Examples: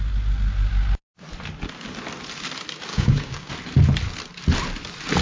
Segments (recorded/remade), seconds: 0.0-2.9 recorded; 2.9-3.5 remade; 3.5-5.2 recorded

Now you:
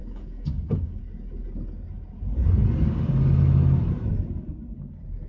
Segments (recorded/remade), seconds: 0.0-1.0 remade; 1.0-5.3 recorded

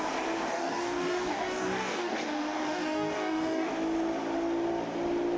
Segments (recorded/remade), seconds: 0.0-0.5 recorded; 0.5-3.7 remade; 3.7-5.4 recorded

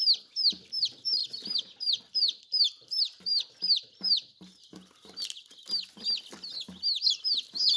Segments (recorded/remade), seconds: 0.0-7.8 recorded

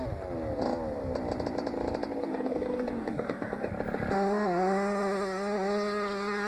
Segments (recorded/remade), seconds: 0.0-2.2 recorded; 2.2-3.7 remade; 3.7-6.5 recorded

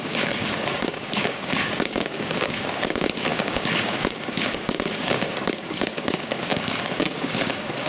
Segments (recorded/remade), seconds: 0.0-7.9 remade

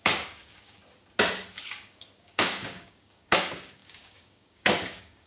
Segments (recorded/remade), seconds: 0.0-0.8 remade; 0.8-1.5 recorded; 1.5-5.3 remade

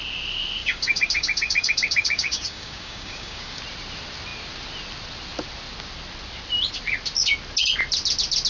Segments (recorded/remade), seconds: 0.0-0.6 recorded; 0.6-3.6 remade; 3.6-8.5 recorded